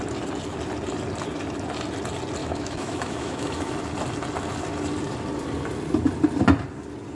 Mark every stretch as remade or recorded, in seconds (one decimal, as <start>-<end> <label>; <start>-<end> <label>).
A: 0.0-2.4 recorded; 2.4-3.7 remade; 3.7-7.1 recorded